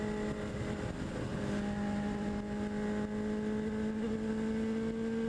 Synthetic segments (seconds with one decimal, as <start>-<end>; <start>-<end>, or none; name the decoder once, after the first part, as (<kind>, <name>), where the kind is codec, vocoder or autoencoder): none